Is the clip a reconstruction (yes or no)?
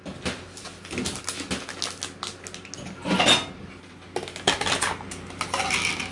no